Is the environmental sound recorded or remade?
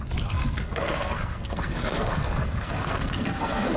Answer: remade